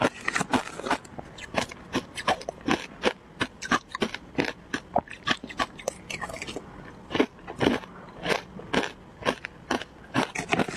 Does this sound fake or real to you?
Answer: real